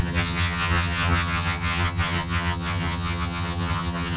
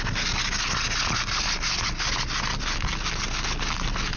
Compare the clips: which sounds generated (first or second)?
first